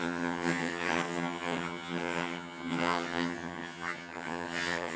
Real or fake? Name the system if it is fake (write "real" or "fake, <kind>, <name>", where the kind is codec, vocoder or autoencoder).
fake, vocoder, HiFi-GAN